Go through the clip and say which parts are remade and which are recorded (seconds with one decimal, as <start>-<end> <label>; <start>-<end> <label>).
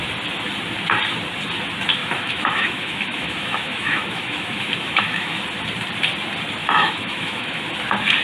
0.0-2.0 recorded; 2.0-5.4 remade; 5.4-6.6 recorded; 6.6-7.6 remade; 7.6-8.2 recorded